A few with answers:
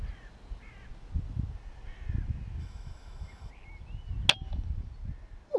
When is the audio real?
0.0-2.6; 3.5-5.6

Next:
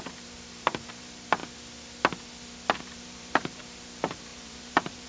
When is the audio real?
1.4-2.8

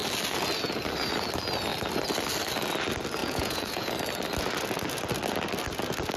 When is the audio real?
0.0-3.2; 3.9-6.2

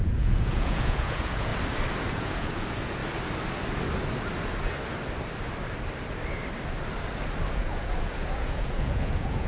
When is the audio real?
1.5-2.1; 3.0-7.5

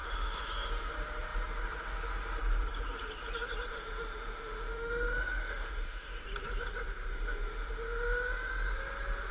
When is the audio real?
0.9-3.7; 6.2-7.1; 7.7-9.3

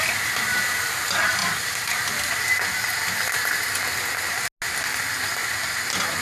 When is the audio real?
0.0-6.2

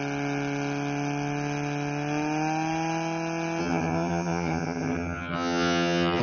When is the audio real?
0.0-3.6

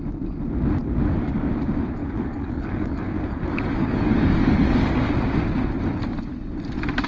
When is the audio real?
0.0-0.8; 1.5-2.0; 5.1-7.1